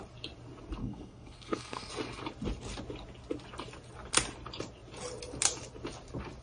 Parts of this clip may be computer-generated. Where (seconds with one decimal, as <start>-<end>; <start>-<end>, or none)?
0.8-1.9